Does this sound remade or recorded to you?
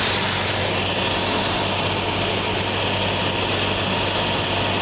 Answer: recorded